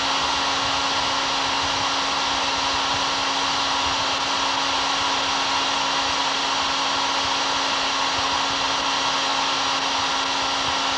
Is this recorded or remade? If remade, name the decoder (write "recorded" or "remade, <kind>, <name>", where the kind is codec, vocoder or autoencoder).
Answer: recorded